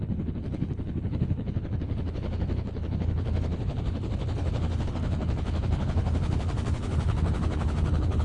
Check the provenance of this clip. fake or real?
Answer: fake